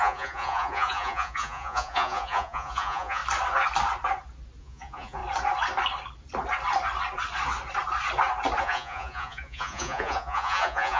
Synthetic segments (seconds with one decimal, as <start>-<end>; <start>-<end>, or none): 0.0-3.2; 4.6-5.2; 8.6-11.0